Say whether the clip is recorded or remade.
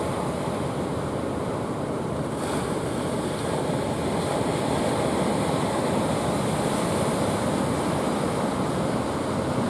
recorded